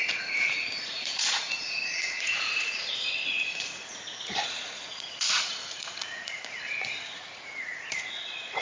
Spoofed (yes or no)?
yes